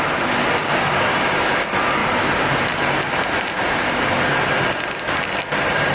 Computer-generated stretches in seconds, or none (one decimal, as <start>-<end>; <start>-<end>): 0.6-1.5